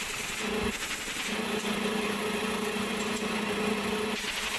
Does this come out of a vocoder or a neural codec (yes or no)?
no